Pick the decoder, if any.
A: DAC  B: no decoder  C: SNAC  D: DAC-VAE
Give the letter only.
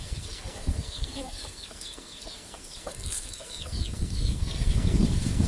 C